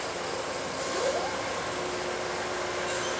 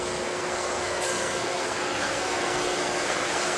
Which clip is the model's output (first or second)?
second